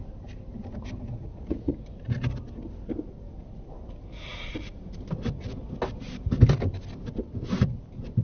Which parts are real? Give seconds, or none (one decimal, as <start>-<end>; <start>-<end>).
0.0-1.2; 1.7-8.2